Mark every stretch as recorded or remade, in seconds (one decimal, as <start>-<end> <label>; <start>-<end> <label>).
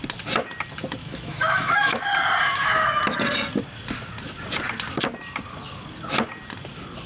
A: 0.0-1.0 recorded; 1.0-2.0 remade; 2.0-2.5 recorded; 2.5-3.0 remade; 3.0-7.1 recorded